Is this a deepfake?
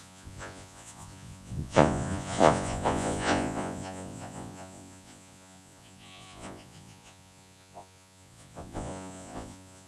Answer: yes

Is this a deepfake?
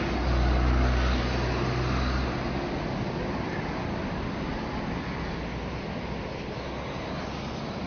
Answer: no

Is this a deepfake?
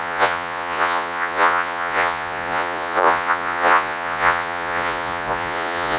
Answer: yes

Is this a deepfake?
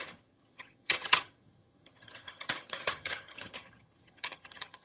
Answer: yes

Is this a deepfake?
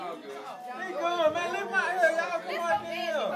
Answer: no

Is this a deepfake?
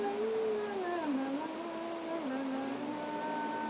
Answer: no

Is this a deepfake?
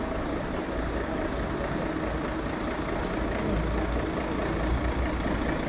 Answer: no